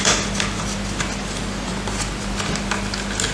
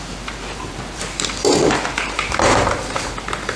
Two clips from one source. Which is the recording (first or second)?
first